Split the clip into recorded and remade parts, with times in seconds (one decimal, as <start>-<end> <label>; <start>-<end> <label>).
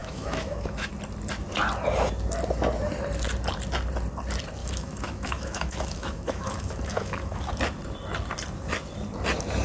0.0-0.9 remade; 0.9-4.6 recorded; 4.6-7.5 remade; 7.5-9.6 recorded